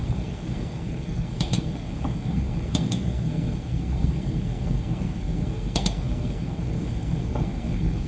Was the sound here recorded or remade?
remade